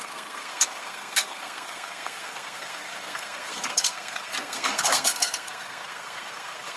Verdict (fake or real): fake